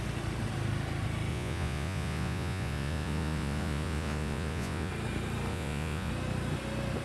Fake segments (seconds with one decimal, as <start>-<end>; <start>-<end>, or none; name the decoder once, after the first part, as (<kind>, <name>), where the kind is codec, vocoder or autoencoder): 1.3-4.9 (vocoder, Vocos); 5.5-6.1